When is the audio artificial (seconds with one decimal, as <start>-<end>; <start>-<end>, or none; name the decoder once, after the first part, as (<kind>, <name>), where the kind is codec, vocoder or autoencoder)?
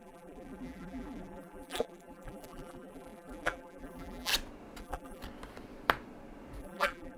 0.0-4.3 (vocoder, BigVGAN v2); 4.8-5.2; 6.6-7.2